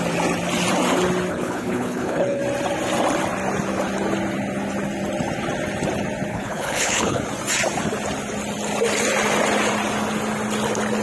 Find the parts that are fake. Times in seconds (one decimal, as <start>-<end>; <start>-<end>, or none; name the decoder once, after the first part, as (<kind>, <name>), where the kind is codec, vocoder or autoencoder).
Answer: 1.3-2.4 (codec, HILCodec); 6.3-7.2